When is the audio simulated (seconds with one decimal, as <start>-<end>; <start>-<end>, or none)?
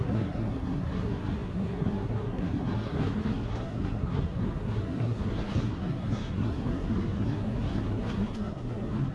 0.0-9.1